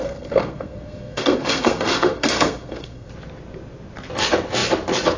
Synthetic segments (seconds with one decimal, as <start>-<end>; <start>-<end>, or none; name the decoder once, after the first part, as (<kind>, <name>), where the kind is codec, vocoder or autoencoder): 0.0-3.1 (codec, SNAC)